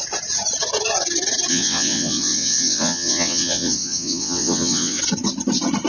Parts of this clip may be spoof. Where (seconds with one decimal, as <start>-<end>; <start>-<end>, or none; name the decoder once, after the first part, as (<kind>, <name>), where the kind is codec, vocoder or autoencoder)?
1.5-5.0 (vocoder, WaveNeXt)